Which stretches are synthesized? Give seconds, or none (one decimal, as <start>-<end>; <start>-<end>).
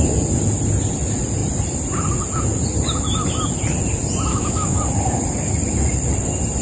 4.3-4.8